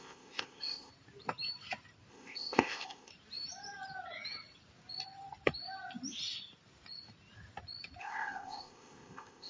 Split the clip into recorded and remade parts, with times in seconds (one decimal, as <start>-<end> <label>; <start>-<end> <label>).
0.0-0.9 remade; 0.9-2.1 recorded; 2.1-3.1 remade; 3.1-8.0 recorded; 8.0-9.5 remade